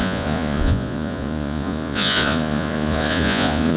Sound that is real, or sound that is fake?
fake